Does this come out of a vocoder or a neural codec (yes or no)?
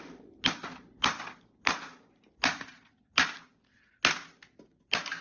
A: no